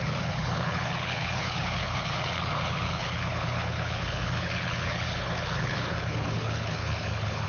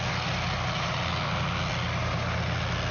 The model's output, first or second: first